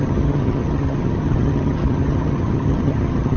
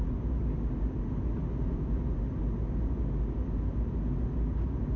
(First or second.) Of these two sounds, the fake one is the first